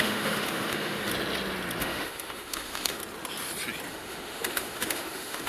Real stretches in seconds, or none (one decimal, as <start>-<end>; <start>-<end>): 1.1-1.8; 3.0-3.9